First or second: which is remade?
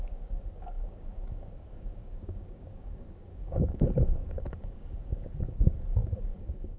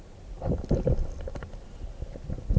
first